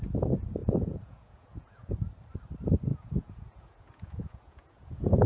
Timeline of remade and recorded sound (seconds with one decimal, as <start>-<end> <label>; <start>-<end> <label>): 0.0-0.6 recorded; 0.6-1.9 remade; 1.9-2.9 recorded; 2.9-5.3 remade